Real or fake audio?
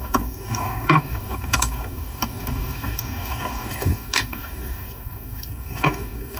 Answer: fake